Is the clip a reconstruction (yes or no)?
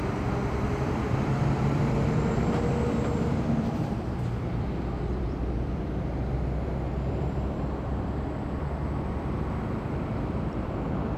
yes